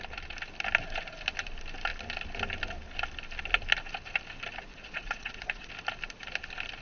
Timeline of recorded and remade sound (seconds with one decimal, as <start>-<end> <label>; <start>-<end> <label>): 0.0-4.7 recorded; 4.7-5.7 remade; 5.7-6.8 recorded